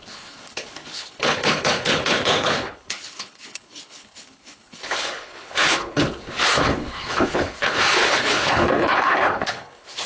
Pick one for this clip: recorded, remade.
remade